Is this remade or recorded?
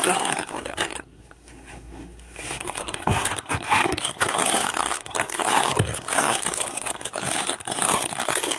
remade